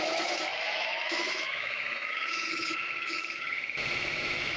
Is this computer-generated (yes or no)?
yes